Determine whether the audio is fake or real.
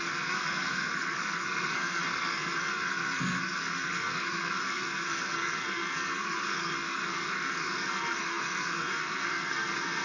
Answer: fake